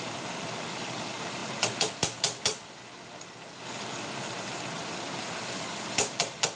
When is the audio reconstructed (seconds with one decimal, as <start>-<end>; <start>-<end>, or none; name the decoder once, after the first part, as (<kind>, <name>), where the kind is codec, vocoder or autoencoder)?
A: none

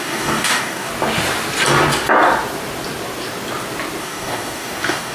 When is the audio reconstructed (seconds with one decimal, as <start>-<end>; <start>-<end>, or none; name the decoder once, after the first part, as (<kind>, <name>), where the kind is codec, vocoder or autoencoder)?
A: 0.0-0.9 (codec, DAC); 4.0-5.1

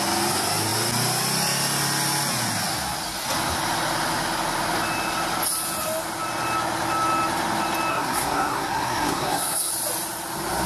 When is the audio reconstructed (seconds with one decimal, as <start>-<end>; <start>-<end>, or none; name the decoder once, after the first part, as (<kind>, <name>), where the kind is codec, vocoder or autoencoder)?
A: 7.9-9.7 (codec, SNAC)